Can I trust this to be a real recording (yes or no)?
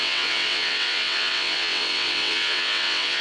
no